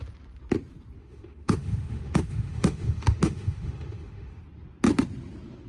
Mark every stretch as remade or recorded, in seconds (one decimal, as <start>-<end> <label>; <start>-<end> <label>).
0.0-1.0 recorded; 1.0-4.4 remade; 4.4-5.7 recorded